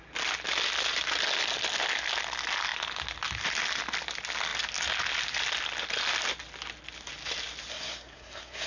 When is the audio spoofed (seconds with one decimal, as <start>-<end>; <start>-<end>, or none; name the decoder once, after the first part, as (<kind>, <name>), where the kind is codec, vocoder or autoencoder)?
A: 7.7-8.7 (codec, SNAC)